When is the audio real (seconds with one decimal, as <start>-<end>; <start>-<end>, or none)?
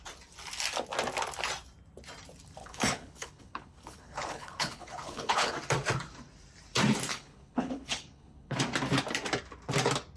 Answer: 0.0-2.6; 5.5-7.1; 8.6-10.2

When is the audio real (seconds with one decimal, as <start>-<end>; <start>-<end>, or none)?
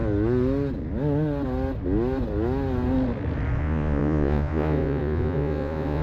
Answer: 0.0-3.6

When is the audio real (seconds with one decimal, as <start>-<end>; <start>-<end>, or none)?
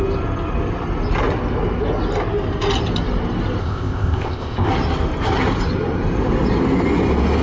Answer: 0.0-3.6; 4.7-7.4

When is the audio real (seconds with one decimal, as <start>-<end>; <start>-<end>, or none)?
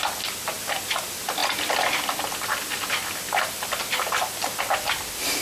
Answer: 0.0-5.4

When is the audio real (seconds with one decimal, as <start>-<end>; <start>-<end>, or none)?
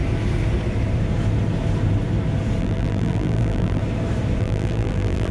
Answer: 0.0-2.6; 3.8-4.4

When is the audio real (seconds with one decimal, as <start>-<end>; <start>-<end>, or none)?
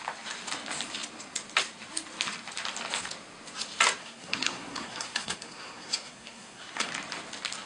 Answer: 0.0-4.0; 6.9-7.7